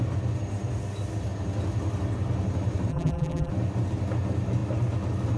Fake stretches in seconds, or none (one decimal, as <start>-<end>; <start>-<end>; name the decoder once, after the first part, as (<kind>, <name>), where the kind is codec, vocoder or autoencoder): 2.9-3.5 (vocoder, BigVGAN v2)